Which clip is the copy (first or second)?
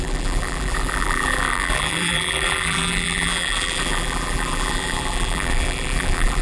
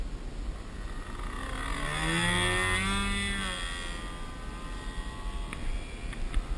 first